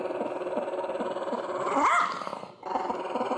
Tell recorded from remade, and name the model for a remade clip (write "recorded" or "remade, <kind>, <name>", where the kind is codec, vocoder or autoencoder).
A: recorded